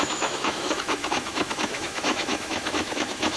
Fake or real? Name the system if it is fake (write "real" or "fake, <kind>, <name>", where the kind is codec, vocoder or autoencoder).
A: fake, autoencoder, DAC-VAE